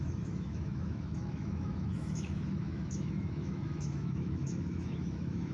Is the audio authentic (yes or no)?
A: no